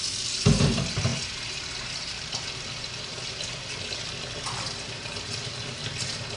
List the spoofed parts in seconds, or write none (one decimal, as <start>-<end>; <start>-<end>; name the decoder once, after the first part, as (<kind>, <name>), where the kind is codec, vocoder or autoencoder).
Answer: none